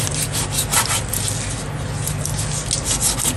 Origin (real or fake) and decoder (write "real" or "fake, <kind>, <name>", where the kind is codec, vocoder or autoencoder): real